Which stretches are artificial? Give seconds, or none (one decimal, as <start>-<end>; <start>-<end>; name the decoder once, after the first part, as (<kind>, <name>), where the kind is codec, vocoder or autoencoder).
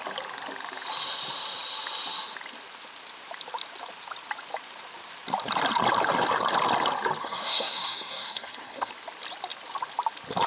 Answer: 7.2-8.9 (codec, SNAC)